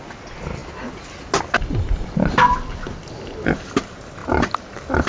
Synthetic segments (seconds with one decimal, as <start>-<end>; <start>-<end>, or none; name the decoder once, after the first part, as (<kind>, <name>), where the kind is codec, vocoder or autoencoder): none